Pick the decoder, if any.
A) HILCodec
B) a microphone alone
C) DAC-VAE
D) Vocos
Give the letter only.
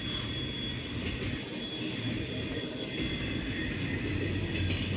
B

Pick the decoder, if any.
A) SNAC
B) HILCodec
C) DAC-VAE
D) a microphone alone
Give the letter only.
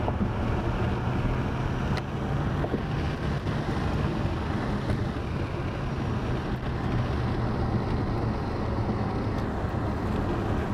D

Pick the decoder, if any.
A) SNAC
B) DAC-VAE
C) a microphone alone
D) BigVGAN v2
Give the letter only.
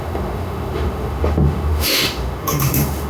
B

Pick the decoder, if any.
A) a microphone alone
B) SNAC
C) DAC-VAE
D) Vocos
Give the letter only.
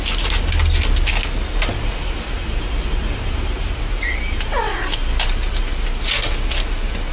A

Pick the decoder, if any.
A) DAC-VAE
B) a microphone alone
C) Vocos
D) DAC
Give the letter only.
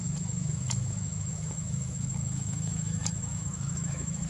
A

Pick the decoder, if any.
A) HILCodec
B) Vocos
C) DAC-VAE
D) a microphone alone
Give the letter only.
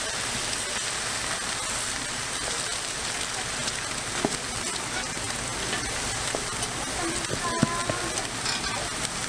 D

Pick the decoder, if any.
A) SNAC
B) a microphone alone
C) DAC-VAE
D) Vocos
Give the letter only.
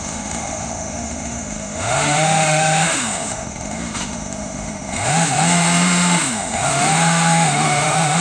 C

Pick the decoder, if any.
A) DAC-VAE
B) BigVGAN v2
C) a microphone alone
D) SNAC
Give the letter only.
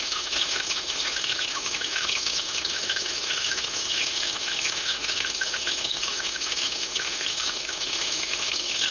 A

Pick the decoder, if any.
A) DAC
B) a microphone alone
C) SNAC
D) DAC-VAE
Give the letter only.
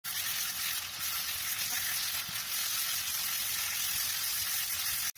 B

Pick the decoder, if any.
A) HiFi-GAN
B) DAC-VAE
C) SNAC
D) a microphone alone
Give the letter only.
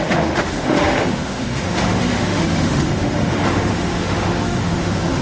B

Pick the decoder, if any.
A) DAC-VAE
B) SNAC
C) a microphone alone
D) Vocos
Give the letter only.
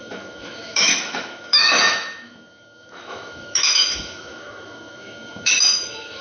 A